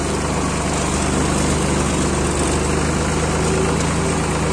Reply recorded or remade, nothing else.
recorded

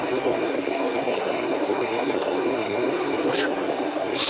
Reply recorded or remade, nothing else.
remade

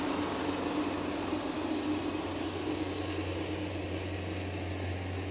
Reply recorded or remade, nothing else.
recorded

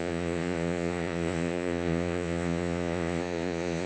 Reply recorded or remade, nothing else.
remade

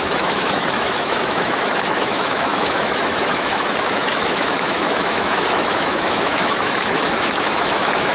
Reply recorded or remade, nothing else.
remade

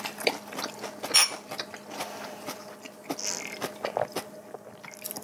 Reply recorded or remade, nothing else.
recorded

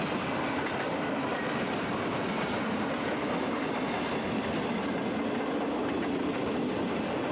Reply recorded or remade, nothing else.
recorded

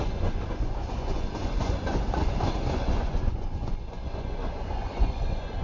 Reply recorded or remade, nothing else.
remade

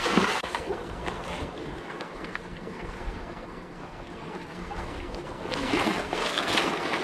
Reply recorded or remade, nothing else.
remade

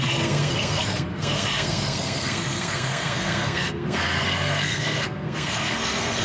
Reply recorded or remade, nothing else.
remade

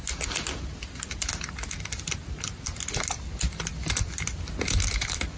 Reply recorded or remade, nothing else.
recorded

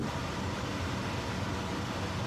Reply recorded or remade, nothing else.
recorded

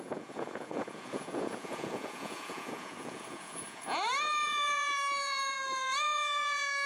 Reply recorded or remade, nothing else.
remade